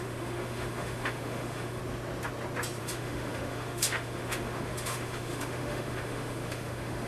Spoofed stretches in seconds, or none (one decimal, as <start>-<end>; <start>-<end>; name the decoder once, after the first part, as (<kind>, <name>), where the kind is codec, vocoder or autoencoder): 0.0-1.8 (autoencoder, DAC-VAE); 2.8-7.1